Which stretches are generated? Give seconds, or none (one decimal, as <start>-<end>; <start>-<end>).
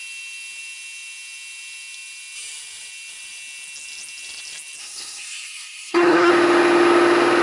4.8-6.3